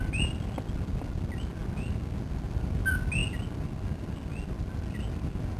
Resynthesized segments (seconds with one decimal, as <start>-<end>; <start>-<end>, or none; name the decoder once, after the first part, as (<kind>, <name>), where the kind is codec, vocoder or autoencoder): none